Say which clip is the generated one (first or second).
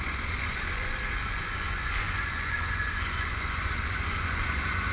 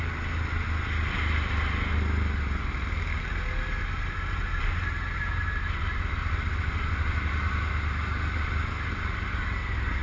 first